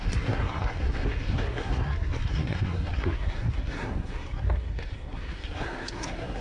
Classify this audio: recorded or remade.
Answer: remade